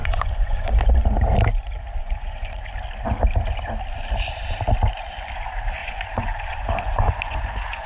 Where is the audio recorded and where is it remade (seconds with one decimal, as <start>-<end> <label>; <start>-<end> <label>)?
0.0-0.7 remade; 0.7-2.0 recorded; 2.0-2.7 remade; 2.7-5.8 recorded; 5.8-7.9 remade